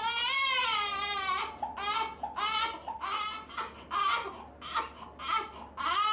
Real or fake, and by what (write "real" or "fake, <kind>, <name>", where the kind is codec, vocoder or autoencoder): real